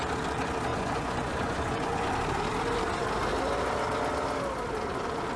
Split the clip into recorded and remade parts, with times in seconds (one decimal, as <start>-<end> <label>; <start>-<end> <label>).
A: 0.0-0.7 recorded; 0.7-2.1 remade; 2.1-5.4 recorded

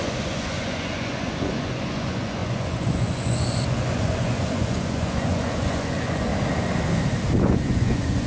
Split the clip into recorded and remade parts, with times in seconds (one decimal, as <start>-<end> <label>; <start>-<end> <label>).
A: 0.0-6.3 remade; 6.3-7.4 recorded; 7.4-8.3 remade

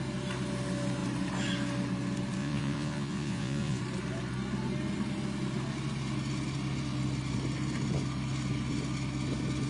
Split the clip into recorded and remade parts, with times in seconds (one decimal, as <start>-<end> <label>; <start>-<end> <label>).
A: 0.0-2.4 recorded; 2.4-3.8 remade; 3.8-9.7 recorded

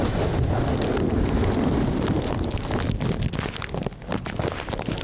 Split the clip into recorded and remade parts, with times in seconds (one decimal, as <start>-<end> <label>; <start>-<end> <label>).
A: 0.0-5.0 recorded

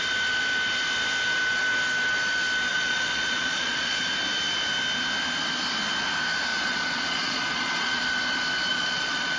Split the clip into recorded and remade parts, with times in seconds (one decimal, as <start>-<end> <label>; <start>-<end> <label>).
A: 0.0-2.7 recorded; 2.7-4.0 remade; 4.0-6.5 recorded; 6.5-8.0 remade; 8.0-8.7 recorded; 8.7-9.4 remade